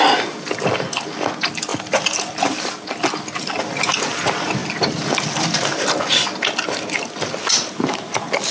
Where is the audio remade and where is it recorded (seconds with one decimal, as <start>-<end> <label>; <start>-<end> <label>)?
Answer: 0.0-8.5 recorded